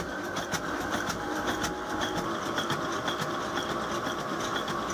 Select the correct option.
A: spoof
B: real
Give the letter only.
A